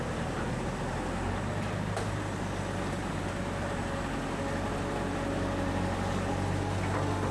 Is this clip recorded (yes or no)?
yes